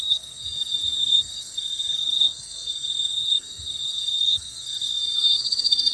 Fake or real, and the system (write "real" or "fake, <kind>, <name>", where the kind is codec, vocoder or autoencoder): fake, codec, SNAC